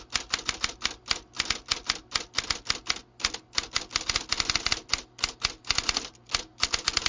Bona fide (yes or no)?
yes